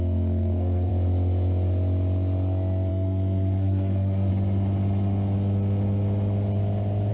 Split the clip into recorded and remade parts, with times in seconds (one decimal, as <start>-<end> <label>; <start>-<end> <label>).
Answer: 0.0-0.9 remade; 0.9-2.9 recorded; 2.9-4.3 remade; 4.3-7.1 recorded

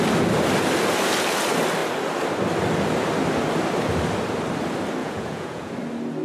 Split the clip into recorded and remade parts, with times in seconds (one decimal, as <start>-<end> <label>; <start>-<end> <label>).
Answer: 0.0-5.0 recorded; 5.0-5.7 remade; 5.7-6.2 recorded

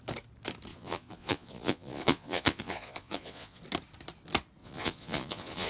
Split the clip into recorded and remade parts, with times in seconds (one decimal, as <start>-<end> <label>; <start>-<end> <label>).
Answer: 0.0-0.7 recorded; 0.7-3.6 remade; 3.6-4.6 recorded; 4.6-5.7 remade

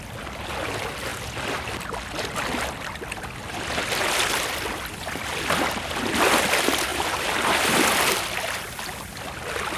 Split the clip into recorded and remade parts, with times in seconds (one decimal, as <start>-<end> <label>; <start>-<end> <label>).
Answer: 0.0-6.9 recorded; 6.9-7.5 remade; 7.5-9.8 recorded

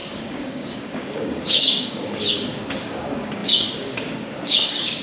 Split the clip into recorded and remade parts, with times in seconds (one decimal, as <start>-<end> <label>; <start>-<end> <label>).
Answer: 0.0-5.0 remade

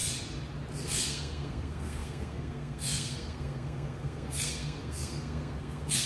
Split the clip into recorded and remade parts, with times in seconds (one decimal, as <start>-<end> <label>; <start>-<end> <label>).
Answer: 0.0-0.7 recorded; 0.7-6.1 remade

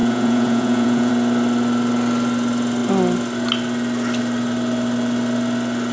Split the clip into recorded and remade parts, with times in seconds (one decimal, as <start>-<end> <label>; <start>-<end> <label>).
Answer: 0.0-1.1 remade; 1.1-5.9 recorded

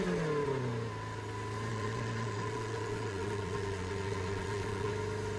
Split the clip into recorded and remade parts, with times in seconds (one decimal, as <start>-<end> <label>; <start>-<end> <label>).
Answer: 0.0-1.7 recorded; 1.7-4.9 remade; 4.9-5.4 recorded